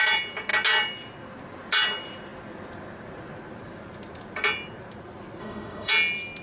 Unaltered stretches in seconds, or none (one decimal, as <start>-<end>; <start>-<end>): 0.0-5.4; 5.9-6.4

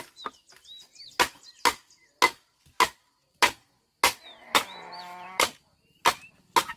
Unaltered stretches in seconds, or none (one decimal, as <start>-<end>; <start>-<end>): 0.0-6.8